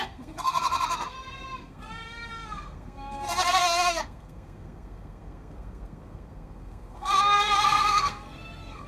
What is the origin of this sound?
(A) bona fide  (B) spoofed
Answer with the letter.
B